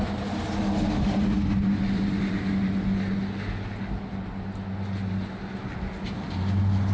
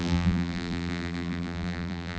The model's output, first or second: second